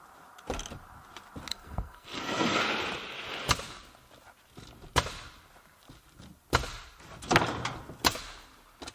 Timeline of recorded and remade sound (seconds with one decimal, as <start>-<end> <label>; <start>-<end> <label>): 0.0-1.5 recorded; 1.5-2.6 remade; 2.6-8.9 recorded